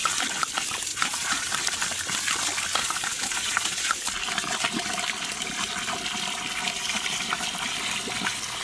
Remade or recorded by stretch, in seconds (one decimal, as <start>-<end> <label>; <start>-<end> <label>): 0.0-0.9 recorded; 0.9-1.5 remade; 1.5-2.8 recorded; 2.8-3.9 remade; 3.9-8.6 recorded